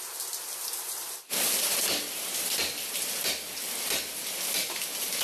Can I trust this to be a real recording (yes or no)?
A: yes